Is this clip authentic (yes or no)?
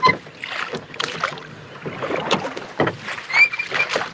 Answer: yes